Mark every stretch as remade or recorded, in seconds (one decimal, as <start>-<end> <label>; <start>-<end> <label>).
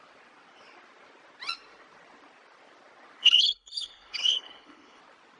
0.0-3.2 recorded; 3.2-5.0 remade; 5.0-5.4 recorded